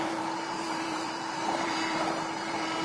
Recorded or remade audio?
remade